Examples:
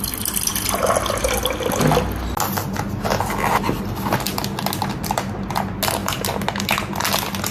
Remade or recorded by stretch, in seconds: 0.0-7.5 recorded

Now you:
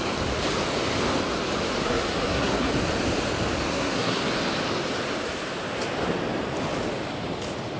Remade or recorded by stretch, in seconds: 0.0-1.8 recorded; 1.8-2.7 remade; 2.7-3.7 recorded; 3.7-4.2 remade; 4.2-7.8 recorded

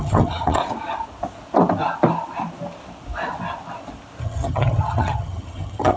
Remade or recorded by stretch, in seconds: 0.0-0.6 remade; 0.6-4.2 recorded; 4.2-6.0 remade

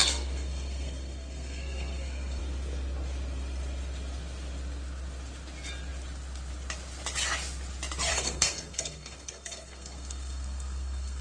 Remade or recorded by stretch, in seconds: 0.0-2.4 remade; 2.4-8.1 recorded; 8.1-11.2 remade

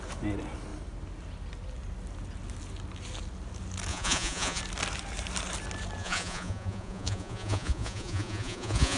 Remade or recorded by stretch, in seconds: 0.0-3.9 recorded; 3.9-4.6 remade; 4.6-6.0 recorded; 6.0-9.0 remade

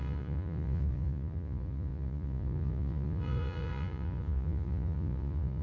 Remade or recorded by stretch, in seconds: 0.0-5.6 remade

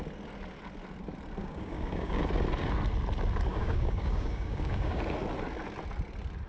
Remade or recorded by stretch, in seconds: 0.0-1.4 recorded; 1.4-2.2 remade; 2.2-3.5 recorded; 3.5-5.0 remade; 5.0-6.5 recorded

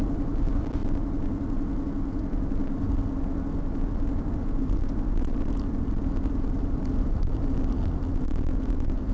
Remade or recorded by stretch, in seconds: 0.0-9.1 recorded